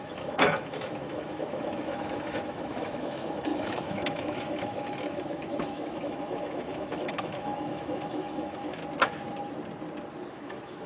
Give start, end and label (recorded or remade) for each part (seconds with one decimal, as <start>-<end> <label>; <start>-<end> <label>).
0.0-8.8 remade; 8.8-10.3 recorded; 10.3-10.9 remade

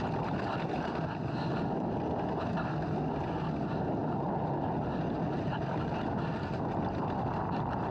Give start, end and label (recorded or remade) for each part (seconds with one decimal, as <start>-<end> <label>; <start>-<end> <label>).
0.0-4.0 recorded; 4.0-4.5 remade; 4.5-7.9 recorded